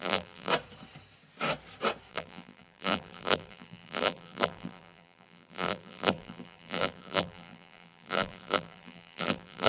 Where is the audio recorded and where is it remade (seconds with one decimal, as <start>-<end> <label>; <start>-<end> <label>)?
0.0-0.5 remade; 0.5-2.1 recorded; 2.1-9.7 remade